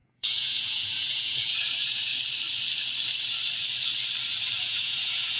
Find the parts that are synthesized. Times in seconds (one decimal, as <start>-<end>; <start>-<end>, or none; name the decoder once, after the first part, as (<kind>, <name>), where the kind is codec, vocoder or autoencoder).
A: 0.0-2.1 (vocoder, Vocos); 4.6-5.4